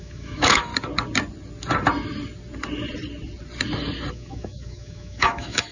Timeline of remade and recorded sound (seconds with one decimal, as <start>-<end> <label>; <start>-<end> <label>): 0.0-0.7 remade; 0.7-4.1 recorded; 4.1-5.7 remade